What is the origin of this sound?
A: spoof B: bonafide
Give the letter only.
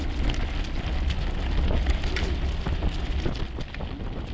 B